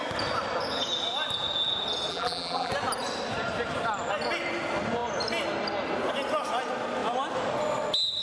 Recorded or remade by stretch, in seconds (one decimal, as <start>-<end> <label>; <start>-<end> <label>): 0.0-2.1 recorded; 2.1-2.7 remade; 2.7-8.2 recorded